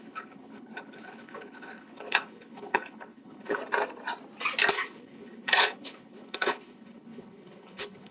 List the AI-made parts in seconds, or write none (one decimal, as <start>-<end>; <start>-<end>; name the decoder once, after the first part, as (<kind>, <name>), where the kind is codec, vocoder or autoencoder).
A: 0.0-3.6 (codec, HILCodec); 4.7-8.1